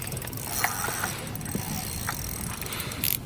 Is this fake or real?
real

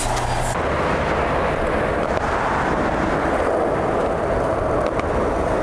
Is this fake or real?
real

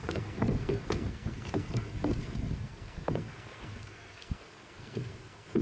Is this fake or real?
fake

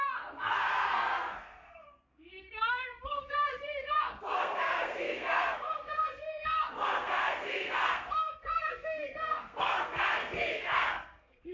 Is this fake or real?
fake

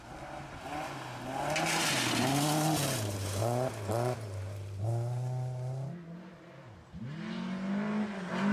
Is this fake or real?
real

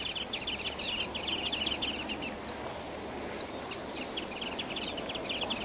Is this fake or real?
real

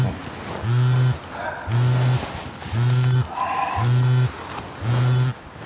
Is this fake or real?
real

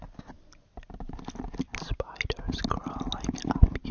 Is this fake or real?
real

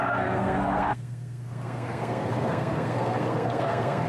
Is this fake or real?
fake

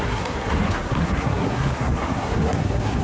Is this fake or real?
fake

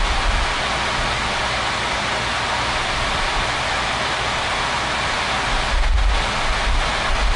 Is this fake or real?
real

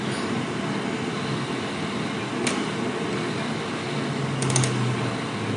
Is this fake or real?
real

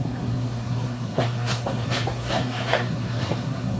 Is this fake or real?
fake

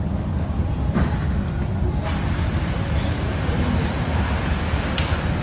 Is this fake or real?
real